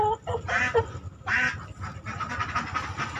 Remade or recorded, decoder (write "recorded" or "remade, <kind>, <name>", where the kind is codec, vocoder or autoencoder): recorded